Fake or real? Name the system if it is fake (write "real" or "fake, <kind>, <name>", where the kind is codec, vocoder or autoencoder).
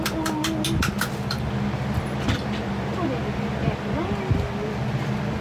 real